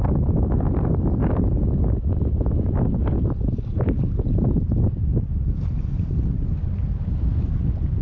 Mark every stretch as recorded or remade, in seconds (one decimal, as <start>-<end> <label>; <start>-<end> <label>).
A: 0.0-8.0 recorded